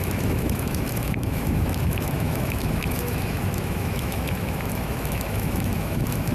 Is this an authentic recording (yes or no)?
no